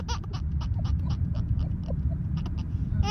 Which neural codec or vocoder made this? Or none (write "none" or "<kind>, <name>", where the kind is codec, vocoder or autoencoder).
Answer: none